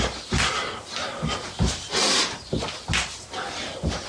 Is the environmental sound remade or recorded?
recorded